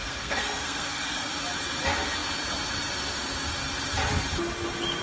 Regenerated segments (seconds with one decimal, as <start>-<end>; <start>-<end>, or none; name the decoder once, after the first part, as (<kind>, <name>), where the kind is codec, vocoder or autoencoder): 0.0-1.3 (codec, SNAC)